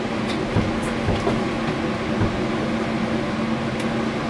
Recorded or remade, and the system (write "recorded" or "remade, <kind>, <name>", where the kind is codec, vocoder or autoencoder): recorded